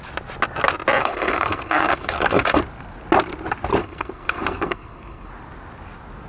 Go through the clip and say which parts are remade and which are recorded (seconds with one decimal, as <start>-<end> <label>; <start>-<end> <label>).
0.0-1.0 recorded; 1.0-2.6 remade; 2.6-3.8 recorded; 3.8-5.3 remade; 5.3-6.3 recorded